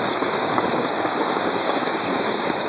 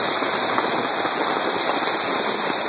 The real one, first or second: second